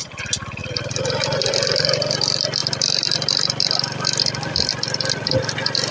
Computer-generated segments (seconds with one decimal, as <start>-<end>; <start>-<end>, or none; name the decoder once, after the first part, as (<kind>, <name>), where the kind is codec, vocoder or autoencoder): 2.6-4.7 (vocoder, BigVGAN v2)